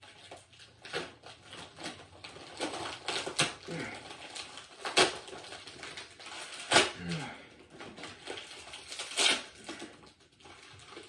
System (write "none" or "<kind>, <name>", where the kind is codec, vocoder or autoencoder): none